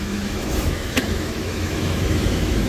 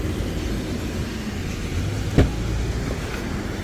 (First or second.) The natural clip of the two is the second